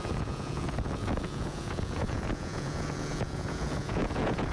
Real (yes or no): no